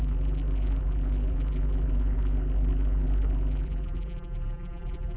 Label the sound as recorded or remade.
remade